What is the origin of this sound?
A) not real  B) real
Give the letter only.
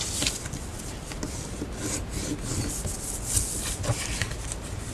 B